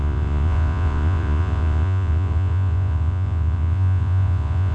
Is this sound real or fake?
fake